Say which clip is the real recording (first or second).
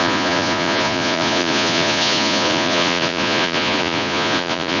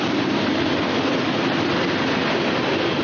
second